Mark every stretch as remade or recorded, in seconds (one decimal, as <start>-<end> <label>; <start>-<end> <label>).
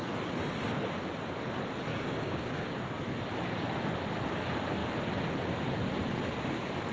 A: 0.0-1.9 recorded; 1.9-3.1 remade; 3.1-6.9 recorded